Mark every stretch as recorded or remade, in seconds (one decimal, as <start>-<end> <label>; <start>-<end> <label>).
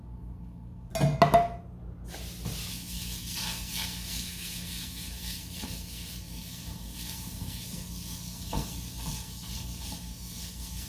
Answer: 0.0-0.9 remade; 0.9-2.7 recorded; 2.7-10.9 remade